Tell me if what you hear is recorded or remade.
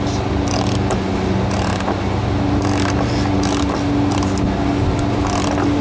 recorded